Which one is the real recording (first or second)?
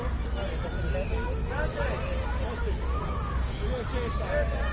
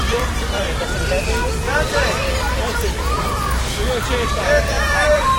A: first